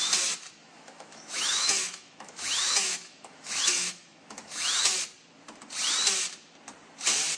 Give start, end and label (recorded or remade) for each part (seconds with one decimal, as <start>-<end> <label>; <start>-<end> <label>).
0.0-0.6 recorded; 0.6-4.9 remade; 4.9-7.4 recorded